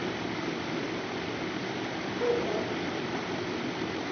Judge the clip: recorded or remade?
recorded